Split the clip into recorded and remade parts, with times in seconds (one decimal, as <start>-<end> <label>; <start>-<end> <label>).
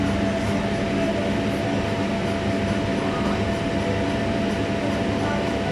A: 0.0-5.7 recorded